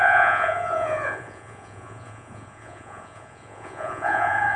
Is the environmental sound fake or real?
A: fake